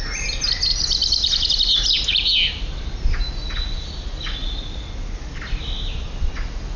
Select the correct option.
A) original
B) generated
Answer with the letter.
A